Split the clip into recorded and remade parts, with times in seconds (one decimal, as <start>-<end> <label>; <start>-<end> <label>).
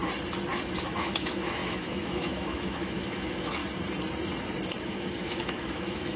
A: 0.0-0.8 recorded; 0.8-3.6 remade; 3.6-4.8 recorded; 4.8-6.2 remade